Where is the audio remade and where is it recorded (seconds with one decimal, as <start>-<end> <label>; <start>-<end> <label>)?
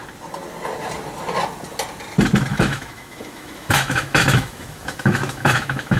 0.0-2.5 recorded; 2.5-6.0 remade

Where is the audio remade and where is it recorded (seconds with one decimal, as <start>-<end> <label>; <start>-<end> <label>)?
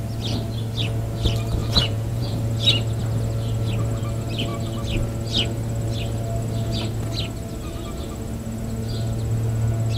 0.0-1.6 recorded; 1.6-2.3 remade; 2.3-10.0 recorded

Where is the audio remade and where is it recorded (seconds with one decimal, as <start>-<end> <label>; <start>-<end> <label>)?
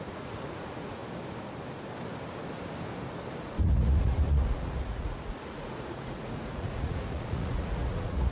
0.0-1.0 remade; 1.0-3.4 recorded; 3.4-8.3 remade